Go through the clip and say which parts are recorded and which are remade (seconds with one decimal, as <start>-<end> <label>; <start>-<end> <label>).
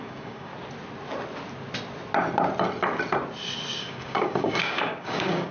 0.0-0.5 remade; 0.5-3.8 recorded; 3.8-5.5 remade